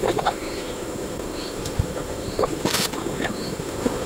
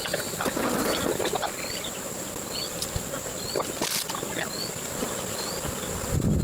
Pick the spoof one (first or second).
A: first